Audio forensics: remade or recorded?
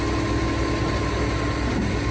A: recorded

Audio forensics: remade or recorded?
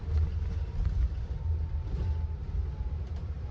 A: recorded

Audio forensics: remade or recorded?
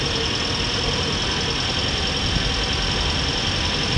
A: recorded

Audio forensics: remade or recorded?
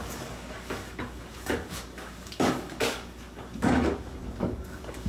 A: remade